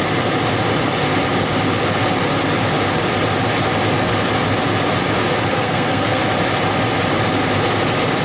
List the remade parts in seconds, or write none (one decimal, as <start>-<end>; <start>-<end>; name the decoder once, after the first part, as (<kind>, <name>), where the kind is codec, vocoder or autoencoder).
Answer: 5.5-6.2 (codec, SNAC)